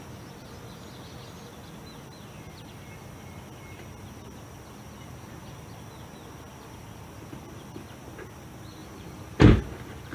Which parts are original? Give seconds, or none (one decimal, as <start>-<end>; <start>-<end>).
0.0-8.8; 9.5-10.1